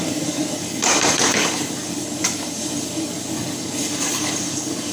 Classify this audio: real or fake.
fake